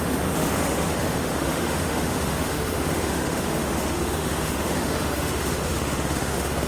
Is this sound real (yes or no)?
no